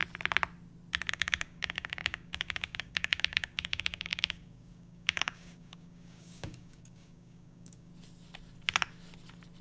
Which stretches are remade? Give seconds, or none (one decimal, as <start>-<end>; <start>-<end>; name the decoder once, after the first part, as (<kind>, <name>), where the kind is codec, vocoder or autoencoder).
1.1-7.9 (codec, DAC)

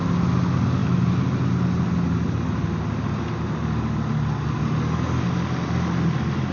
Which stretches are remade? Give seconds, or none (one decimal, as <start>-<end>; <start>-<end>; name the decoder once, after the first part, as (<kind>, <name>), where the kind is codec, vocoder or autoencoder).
none

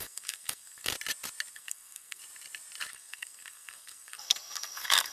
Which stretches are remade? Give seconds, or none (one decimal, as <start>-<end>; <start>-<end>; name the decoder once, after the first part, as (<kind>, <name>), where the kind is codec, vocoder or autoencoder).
0.0-0.9 (codec, SNAC); 1.5-2.2; 2.9-5.1

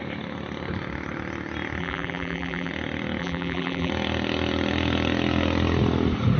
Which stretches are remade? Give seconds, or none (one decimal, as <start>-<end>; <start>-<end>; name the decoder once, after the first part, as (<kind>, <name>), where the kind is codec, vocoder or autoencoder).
1.8-2.7 (vocoder, BigVGAN v2); 3.2-3.9

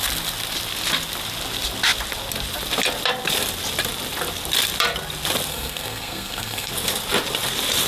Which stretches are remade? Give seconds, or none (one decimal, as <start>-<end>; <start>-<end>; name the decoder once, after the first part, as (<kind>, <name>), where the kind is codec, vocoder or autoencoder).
5.5-6.7 (codec, SNAC)

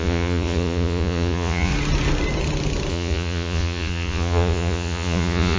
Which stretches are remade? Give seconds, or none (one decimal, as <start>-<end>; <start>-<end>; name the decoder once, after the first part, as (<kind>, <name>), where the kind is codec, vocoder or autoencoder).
0.0-1.7 (vocoder, Vocos); 2.9-5.6

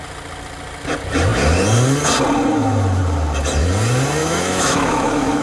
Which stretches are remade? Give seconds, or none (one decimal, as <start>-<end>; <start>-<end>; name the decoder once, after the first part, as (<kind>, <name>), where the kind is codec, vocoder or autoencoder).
4.2-5.4 (autoencoder, DAC-VAE)

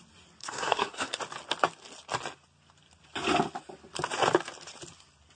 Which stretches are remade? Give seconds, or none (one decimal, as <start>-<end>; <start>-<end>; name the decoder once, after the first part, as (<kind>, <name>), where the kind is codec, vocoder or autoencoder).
0.4-1.2 (codec, SNAC)